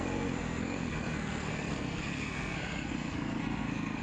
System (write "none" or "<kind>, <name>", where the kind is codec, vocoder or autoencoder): codec, SNAC